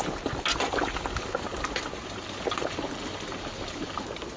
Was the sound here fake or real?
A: real